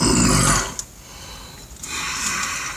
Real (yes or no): yes